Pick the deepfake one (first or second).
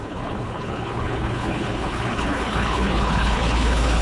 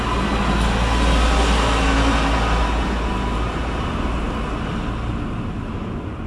first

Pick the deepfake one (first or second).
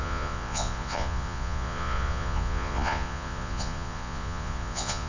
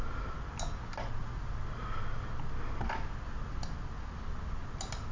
first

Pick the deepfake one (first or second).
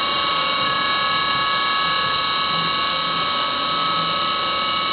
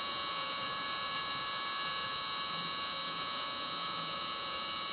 second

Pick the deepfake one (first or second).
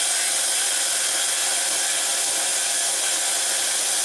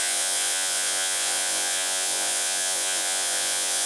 second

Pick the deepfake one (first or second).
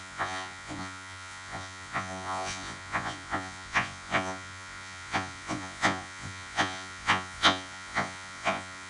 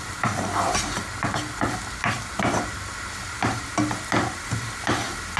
first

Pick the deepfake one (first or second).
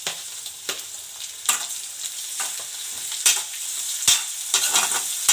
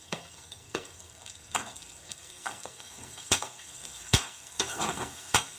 second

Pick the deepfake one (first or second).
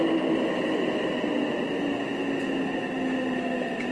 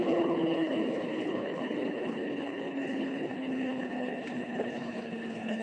second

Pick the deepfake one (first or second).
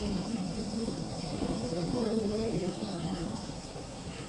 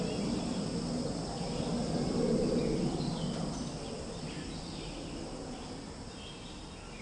first